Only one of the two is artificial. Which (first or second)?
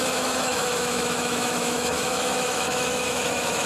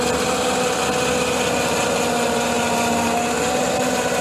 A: first